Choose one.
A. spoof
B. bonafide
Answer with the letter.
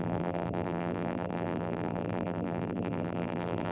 A